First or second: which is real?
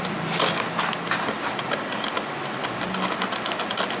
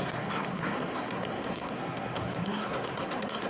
first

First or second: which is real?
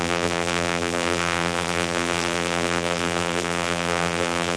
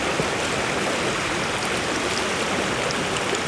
second